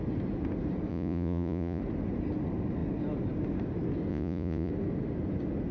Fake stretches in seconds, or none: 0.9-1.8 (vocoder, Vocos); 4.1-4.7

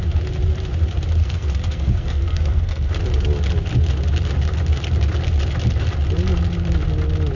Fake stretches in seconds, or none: 1.2-2.9 (codec, SNAC)

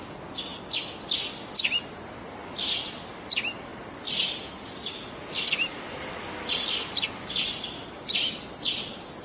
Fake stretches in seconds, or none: none

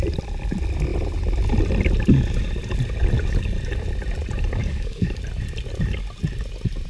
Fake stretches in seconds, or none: 4.6-5.2 (codec, DAC)

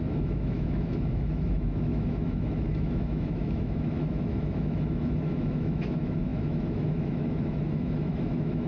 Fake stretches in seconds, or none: 0.0-8.7 (autoencoder, DAC-VAE)

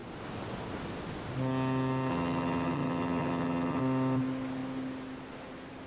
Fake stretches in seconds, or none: 2.1-3.8 (vocoder, HiFi-GAN)